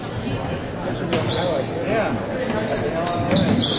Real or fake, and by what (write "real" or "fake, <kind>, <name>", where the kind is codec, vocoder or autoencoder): real